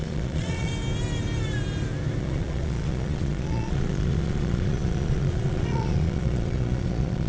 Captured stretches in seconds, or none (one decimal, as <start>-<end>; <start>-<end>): 0.7-2.2